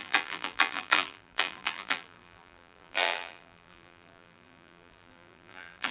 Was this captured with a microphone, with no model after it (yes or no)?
no